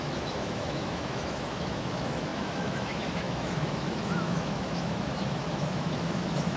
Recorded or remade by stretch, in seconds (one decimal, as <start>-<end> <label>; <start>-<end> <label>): 0.0-6.6 remade